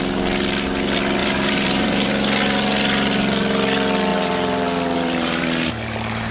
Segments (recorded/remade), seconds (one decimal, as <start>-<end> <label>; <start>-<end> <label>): 0.0-1.2 recorded; 1.2-2.1 remade; 2.1-4.1 recorded; 4.1-6.3 remade